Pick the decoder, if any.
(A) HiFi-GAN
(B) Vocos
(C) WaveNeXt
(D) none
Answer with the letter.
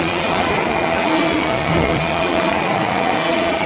B